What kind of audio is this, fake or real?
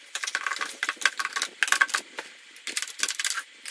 real